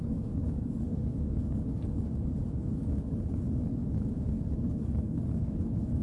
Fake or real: fake